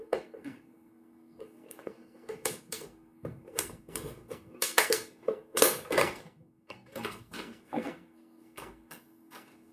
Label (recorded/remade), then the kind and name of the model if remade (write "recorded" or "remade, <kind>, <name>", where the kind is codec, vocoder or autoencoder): remade, codec, SNAC